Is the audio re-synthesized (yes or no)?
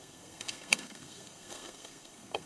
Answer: yes